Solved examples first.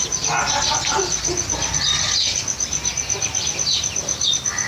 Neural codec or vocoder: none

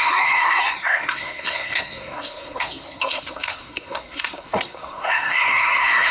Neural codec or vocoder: codec, SNAC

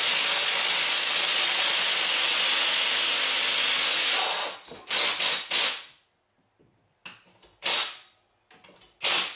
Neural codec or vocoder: none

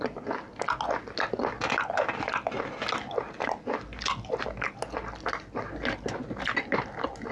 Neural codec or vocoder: none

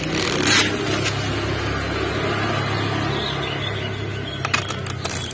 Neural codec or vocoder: none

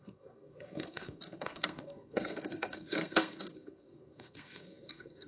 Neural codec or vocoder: codec, SNAC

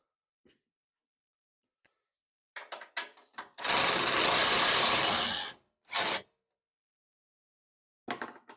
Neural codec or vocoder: none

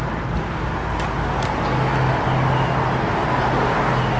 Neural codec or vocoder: none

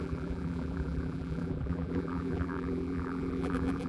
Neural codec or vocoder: vocoder, BigVGAN v2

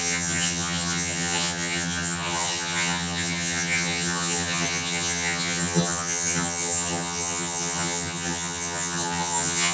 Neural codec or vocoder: vocoder, HiFi-GAN